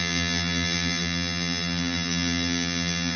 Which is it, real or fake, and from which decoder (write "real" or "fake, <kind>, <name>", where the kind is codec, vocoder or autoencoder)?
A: fake, vocoder, BigVGAN v2